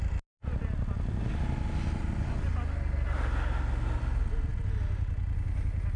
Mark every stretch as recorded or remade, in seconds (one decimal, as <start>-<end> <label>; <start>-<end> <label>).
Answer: 0.0-6.0 recorded